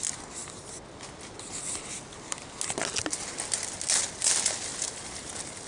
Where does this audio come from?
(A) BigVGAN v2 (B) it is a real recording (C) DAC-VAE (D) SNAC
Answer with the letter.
B